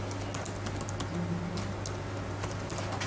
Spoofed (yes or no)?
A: no